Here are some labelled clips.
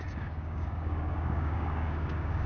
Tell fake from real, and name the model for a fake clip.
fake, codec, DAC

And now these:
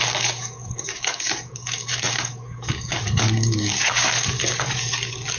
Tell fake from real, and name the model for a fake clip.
fake, codec, DAC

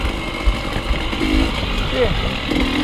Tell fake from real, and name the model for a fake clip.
real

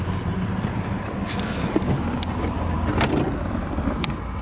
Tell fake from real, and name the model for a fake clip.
real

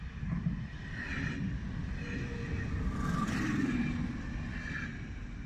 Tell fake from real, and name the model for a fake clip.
real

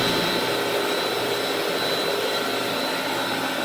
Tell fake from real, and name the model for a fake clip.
real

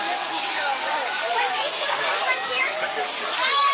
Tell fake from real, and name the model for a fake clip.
fake, codec, DAC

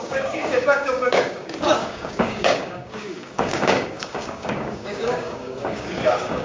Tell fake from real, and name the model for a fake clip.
fake, codec, DAC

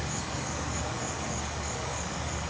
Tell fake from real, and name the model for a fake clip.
fake, codec, DAC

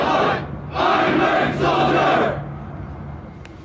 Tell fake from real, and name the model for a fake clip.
real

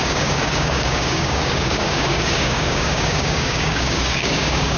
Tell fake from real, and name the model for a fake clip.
fake, codec, DAC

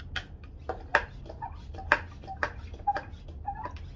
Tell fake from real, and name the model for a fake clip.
real